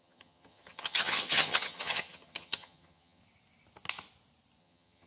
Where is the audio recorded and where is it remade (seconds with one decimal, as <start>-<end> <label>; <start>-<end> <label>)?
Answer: 0.0-3.2 remade; 3.2-4.6 recorded; 4.6-5.1 remade